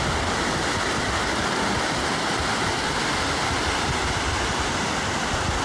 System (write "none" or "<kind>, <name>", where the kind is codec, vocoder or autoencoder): none